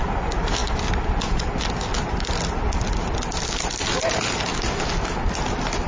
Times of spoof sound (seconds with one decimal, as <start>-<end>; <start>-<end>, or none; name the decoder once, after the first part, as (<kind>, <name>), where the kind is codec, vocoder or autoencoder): none